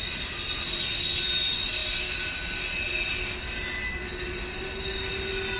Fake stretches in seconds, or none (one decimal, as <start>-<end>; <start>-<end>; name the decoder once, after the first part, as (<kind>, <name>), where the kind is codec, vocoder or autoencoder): none